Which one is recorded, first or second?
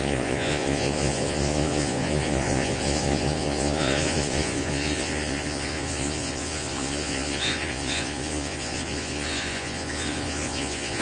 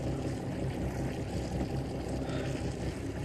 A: second